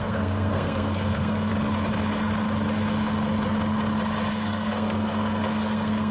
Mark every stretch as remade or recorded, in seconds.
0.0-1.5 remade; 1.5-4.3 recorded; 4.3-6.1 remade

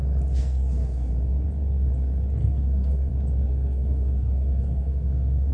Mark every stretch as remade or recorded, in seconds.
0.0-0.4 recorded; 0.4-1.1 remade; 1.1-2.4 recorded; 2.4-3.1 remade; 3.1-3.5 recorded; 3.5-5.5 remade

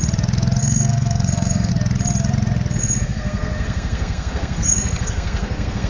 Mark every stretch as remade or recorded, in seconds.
0.0-0.6 recorded; 0.6-1.7 remade; 1.7-2.8 recorded; 2.8-5.9 remade

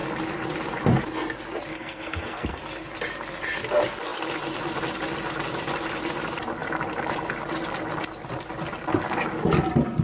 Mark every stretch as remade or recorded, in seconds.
0.0-1.7 recorded; 1.7-2.6 remade; 2.6-10.0 recorded

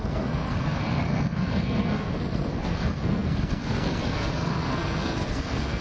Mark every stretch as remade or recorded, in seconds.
0.0-5.8 remade